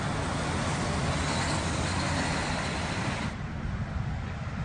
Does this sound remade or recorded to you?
recorded